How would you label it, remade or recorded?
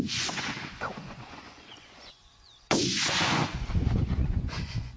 remade